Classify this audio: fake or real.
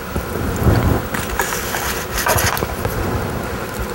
real